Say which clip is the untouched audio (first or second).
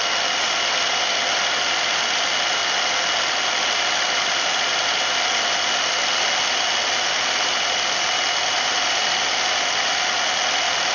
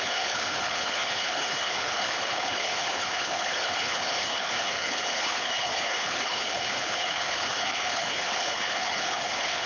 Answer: first